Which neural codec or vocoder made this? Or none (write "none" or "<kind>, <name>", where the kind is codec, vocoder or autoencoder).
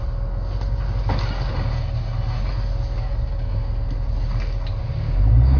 none